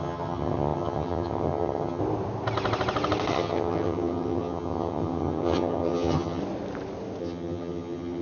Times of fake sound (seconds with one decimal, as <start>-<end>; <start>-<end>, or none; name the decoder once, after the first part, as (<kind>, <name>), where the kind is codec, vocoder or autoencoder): 0.0-2.0 (vocoder, HiFi-GAN); 3.3-6.4; 7.2-8.2